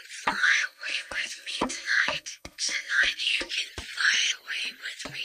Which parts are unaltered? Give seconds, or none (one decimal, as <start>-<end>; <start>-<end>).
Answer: 0.0-0.4; 3.5-5.2